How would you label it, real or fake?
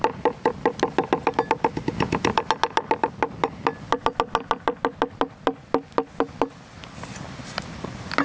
real